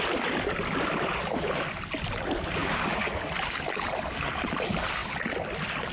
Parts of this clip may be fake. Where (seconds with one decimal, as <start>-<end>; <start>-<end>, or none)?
2.6-3.2